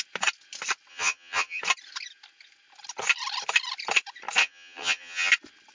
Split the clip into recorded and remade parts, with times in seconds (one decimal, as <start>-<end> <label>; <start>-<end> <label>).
0.0-0.9 recorded; 0.9-1.6 remade; 1.6-4.4 recorded; 4.4-5.3 remade; 5.3-5.7 recorded